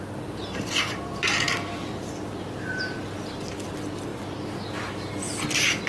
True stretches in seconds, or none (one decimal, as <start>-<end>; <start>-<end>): 0.0-5.9